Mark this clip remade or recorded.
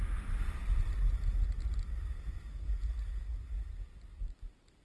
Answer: recorded